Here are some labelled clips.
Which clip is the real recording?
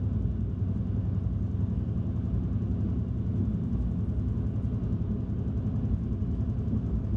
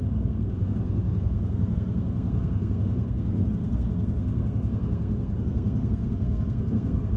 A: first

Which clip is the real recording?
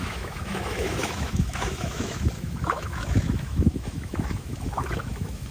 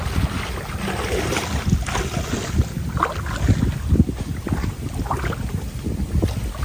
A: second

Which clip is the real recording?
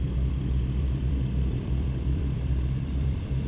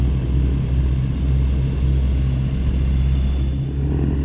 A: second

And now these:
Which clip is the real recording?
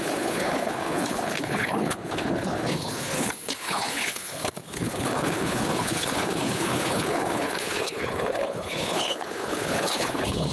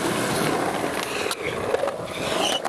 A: second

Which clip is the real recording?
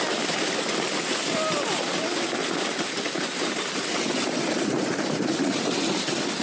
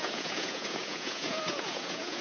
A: first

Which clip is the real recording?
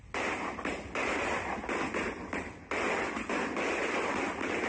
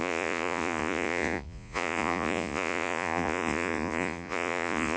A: first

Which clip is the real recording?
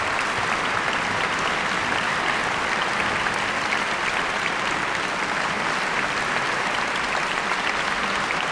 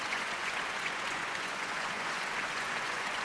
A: first